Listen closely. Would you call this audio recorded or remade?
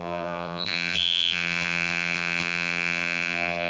remade